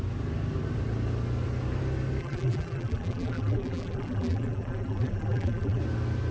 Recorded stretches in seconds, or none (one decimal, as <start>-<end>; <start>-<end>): 0.0-2.2; 5.8-6.3